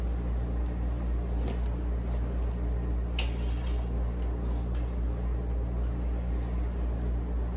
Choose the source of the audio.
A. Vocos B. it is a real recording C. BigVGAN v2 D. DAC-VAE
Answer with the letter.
B